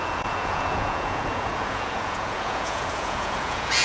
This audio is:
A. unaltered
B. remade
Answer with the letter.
B